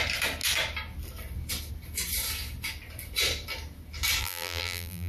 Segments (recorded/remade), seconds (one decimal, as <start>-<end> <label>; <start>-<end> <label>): 0.0-4.2 recorded; 4.2-5.1 remade